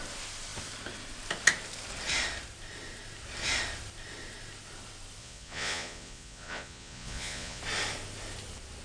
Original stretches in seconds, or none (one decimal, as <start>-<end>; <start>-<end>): 0.0-5.2; 7.6-8.8